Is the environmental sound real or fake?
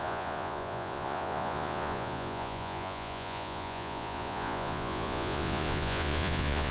fake